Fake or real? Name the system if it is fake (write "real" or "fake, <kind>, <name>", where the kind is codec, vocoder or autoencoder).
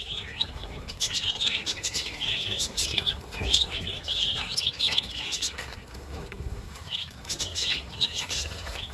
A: fake, codec, SNAC